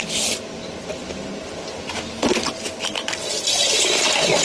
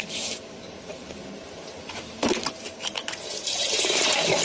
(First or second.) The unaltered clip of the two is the first